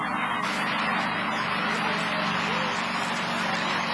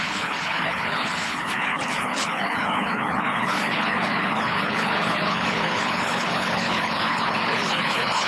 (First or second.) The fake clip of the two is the second